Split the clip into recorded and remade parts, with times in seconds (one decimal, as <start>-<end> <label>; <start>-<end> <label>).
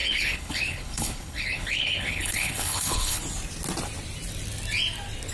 0.0-3.2 remade; 3.2-5.3 recorded